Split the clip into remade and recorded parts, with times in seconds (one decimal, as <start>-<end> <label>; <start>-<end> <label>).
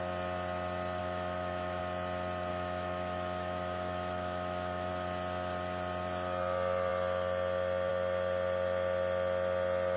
0.0-1.0 recorded; 1.0-1.8 remade; 1.8-2.5 recorded; 2.5-4.9 remade; 4.9-10.0 recorded